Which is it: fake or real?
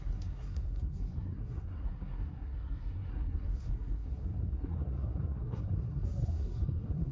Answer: fake